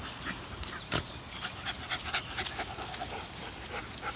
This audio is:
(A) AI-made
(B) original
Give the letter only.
B